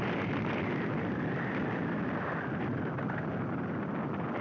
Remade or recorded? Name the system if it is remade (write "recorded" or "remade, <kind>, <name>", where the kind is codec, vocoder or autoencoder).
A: recorded